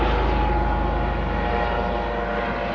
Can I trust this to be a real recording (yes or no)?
yes